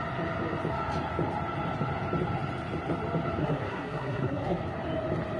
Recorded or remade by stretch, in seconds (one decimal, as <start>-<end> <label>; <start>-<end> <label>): 0.0-3.4 recorded; 3.4-4.6 remade; 4.6-5.4 recorded